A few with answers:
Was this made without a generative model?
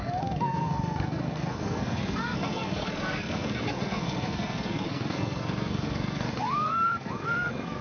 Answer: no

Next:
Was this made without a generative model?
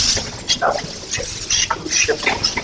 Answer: yes